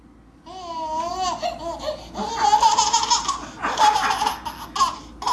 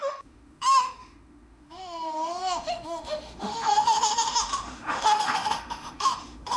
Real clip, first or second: first